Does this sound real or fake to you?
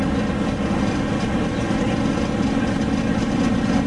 real